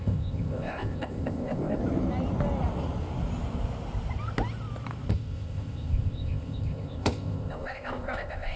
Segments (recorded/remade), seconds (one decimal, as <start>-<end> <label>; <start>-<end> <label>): 0.0-1.8 remade; 1.8-5.1 recorded; 5.1-8.6 remade